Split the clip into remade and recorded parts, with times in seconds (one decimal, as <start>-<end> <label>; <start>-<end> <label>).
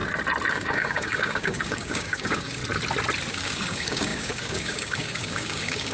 0.0-0.5 recorded; 0.5-2.6 remade; 2.6-3.3 recorded; 3.3-5.9 remade